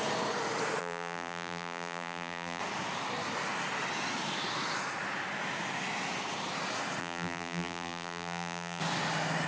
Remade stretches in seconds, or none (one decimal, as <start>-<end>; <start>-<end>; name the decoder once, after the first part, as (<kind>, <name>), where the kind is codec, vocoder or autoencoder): 0.8-2.6 (vocoder, BigVGAN v2); 7.0-8.8